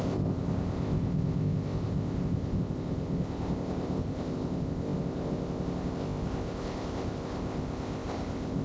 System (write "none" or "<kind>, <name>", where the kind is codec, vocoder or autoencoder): codec, ZipCodec